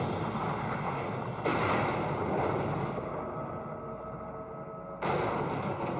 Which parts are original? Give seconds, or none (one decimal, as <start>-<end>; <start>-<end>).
0.0-6.0